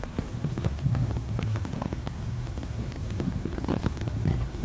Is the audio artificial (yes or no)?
yes